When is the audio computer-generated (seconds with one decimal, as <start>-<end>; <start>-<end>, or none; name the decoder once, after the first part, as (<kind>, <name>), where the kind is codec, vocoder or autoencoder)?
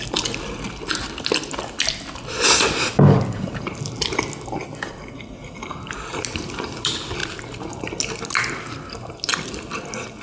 none